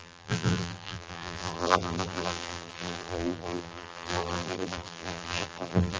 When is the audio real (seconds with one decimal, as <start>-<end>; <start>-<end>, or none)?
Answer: none